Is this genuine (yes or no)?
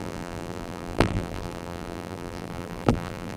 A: no